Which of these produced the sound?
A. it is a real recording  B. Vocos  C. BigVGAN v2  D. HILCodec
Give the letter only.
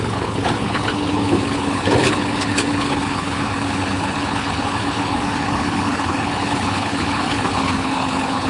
D